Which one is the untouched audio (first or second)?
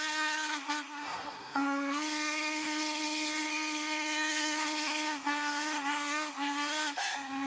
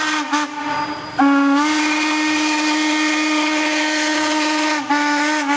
second